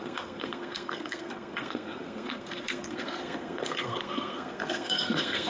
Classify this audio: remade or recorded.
remade